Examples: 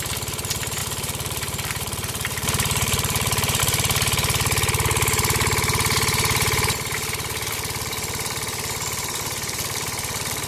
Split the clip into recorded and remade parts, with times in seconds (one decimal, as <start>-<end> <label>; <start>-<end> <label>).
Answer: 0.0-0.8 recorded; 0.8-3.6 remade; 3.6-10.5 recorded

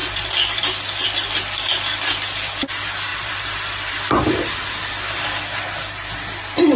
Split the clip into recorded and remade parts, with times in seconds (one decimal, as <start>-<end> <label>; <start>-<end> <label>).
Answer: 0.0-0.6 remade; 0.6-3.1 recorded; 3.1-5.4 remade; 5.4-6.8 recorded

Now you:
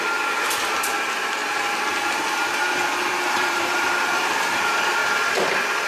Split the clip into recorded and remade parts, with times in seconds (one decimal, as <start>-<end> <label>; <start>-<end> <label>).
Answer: 0.0-1.4 remade; 1.4-3.1 recorded; 3.1-5.0 remade; 5.0-5.9 recorded

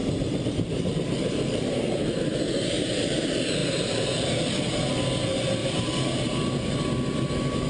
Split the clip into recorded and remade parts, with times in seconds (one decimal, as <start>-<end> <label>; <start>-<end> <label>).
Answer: 0.0-3.2 remade; 3.2-3.6 recorded; 3.6-4.4 remade; 4.4-5.6 recorded; 5.6-6.4 remade; 6.4-7.7 recorded

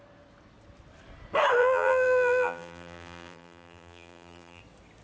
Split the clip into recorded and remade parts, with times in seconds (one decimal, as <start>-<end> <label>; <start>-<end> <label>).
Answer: 0.0-1.6 recorded; 1.6-4.6 remade; 4.6-5.0 recorded

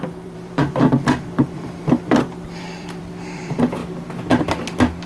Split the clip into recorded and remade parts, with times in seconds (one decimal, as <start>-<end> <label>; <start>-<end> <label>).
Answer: 0.0-3.8 remade; 3.8-5.1 recorded